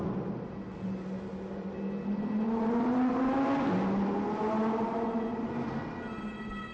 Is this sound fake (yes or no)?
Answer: no